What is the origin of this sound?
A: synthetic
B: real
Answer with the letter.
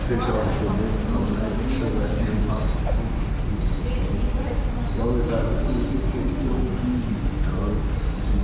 B